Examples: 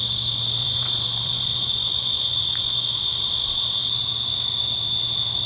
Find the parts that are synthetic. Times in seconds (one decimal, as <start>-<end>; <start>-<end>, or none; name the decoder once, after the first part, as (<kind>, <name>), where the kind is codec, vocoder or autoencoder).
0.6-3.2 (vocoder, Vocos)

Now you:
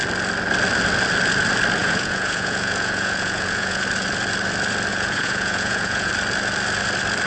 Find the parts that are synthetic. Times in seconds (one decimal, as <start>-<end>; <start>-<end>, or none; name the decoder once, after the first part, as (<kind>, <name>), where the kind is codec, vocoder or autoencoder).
1.8-3.8 (vocoder, Vocos); 4.9-6.1

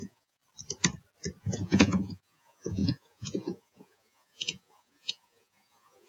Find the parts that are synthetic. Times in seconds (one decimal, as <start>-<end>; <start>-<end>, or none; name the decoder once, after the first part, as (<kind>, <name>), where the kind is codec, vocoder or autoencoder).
0.0-0.4 (vocoder, Vocos); 1.4-6.1

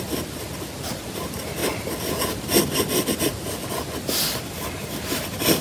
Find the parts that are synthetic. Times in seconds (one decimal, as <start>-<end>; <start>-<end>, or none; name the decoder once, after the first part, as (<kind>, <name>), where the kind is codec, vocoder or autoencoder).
none

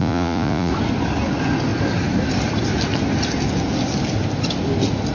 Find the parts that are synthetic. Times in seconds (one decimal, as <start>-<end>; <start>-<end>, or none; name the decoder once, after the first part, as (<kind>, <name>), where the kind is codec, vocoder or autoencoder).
0.0-0.7 (vocoder, Vocos)